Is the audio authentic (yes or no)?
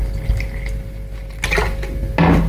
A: yes